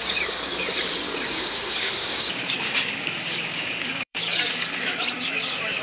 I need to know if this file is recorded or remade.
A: remade